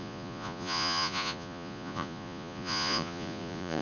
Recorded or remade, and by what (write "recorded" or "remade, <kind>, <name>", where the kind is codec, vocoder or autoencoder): remade, vocoder, Vocos